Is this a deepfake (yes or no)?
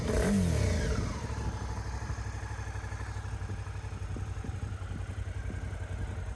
no